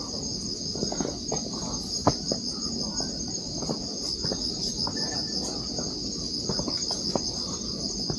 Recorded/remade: recorded